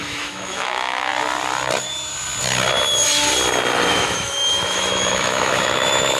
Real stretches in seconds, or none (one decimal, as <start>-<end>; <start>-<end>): 1.1-3.9